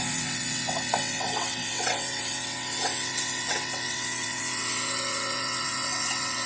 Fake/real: fake